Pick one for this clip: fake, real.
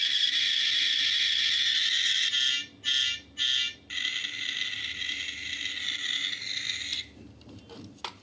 real